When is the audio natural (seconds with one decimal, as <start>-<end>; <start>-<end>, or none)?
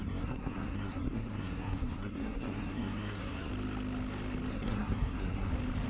3.5-4.5; 5.5-5.9